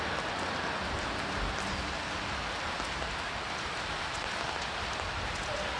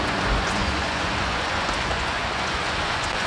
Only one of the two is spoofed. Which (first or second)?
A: second